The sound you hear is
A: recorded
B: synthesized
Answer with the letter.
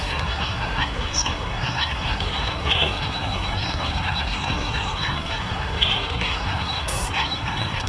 B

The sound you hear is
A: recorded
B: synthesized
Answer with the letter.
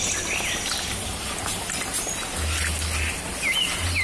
A